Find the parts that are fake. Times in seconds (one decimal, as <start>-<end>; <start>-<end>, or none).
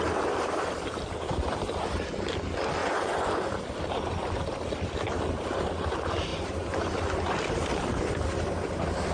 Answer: 2.8-3.4